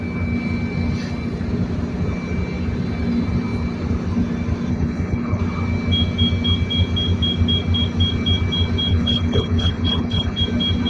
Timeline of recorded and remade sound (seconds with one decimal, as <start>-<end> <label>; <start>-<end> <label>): 0.0-4.7 recorded; 4.7-5.4 remade; 5.4-8.9 recorded; 8.9-10.4 remade; 10.4-10.9 recorded